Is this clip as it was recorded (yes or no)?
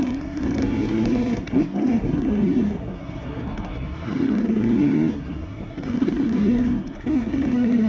no